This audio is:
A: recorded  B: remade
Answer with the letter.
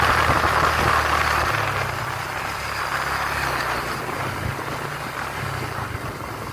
A